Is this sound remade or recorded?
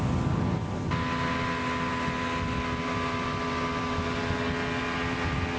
recorded